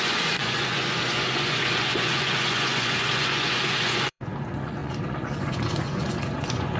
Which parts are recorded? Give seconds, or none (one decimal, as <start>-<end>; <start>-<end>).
none